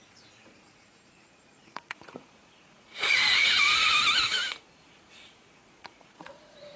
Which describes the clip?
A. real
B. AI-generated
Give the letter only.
B